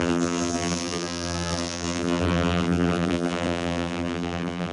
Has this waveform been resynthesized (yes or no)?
yes